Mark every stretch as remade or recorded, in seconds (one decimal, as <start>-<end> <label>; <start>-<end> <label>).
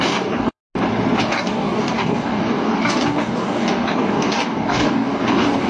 0.0-0.6 remade; 0.6-1.2 recorded; 1.2-5.7 remade